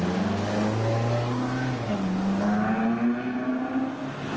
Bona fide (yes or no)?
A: yes